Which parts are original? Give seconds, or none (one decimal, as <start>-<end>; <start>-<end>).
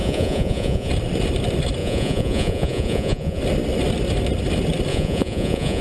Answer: 0.9-1.8; 3.4-4.9